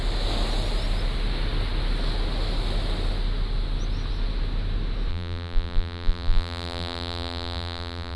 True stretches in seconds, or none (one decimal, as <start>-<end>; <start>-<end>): 0.0-5.1